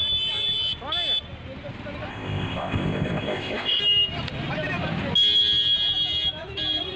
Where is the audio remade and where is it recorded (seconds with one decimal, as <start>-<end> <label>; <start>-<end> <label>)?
0.0-2.1 recorded; 2.1-3.8 remade; 3.8-7.0 recorded